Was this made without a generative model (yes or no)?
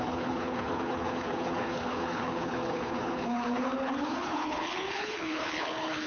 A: no